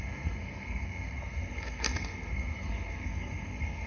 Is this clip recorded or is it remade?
remade